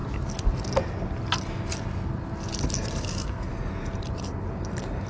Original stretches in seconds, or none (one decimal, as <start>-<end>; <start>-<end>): 0.0-3.0; 3.5-5.1